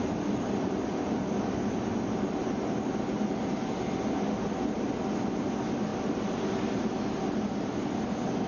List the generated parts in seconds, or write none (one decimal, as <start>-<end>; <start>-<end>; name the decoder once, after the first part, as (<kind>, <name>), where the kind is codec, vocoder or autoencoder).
none